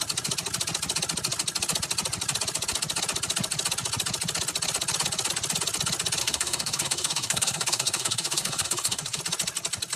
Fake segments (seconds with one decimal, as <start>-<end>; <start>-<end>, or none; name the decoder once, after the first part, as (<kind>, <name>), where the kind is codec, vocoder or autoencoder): 6.2-9.2 (codec, SNAC)